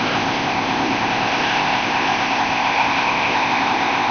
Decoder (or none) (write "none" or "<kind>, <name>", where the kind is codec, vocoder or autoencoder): codec, ZipCodec